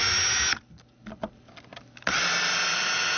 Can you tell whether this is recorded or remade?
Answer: recorded